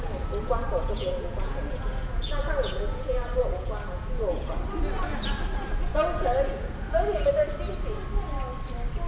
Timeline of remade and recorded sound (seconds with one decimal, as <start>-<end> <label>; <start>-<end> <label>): 0.0-0.4 recorded; 0.4-4.5 remade; 4.5-5.9 recorded; 5.9-7.3 remade; 7.3-9.1 recorded